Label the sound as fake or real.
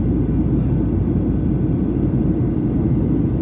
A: real